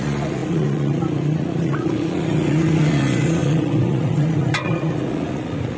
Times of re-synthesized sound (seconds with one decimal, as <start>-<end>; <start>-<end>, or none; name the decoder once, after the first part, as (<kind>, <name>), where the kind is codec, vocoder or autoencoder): 0.0-5.8 (vocoder, Vocos)